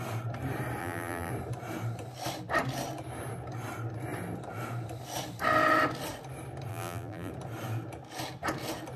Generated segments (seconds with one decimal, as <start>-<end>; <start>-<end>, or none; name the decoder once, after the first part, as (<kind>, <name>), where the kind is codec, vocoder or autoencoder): 0.8-1.3 (vocoder, BigVGAN v2); 6.7-7.3